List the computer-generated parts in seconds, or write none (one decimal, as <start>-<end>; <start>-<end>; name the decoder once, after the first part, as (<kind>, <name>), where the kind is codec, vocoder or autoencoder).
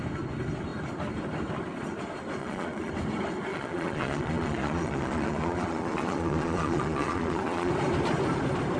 2.4-2.9 (vocoder, Vocos); 3.5-7.7